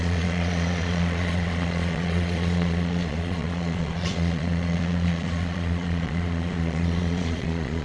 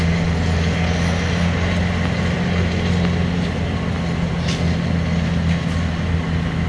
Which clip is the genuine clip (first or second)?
second